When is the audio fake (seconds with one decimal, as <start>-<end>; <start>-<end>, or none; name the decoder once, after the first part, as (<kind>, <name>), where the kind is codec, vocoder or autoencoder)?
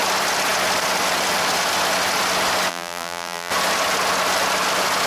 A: 2.7-3.5 (vocoder, BigVGAN v2)